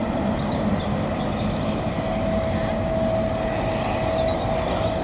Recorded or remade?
recorded